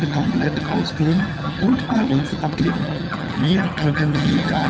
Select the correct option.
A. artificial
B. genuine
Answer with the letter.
A